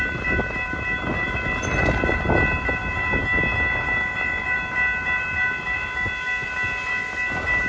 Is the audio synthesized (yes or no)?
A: no